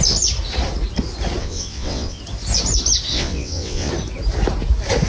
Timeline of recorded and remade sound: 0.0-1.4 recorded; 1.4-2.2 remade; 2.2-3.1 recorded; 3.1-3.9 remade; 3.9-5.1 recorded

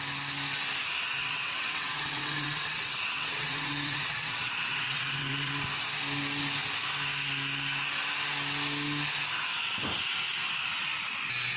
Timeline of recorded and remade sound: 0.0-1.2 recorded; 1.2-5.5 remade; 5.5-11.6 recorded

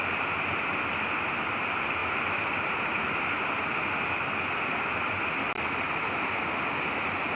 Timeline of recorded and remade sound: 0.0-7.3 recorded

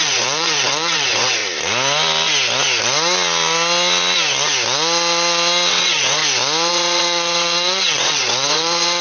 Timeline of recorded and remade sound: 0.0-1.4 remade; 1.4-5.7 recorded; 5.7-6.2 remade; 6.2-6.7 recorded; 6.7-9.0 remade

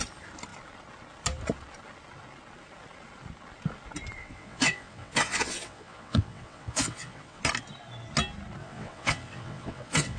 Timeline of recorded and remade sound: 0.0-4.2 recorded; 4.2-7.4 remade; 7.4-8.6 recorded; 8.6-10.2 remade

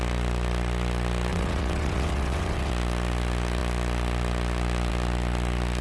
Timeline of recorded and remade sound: 0.0-1.3 recorded; 1.3-2.7 remade; 2.7-5.8 recorded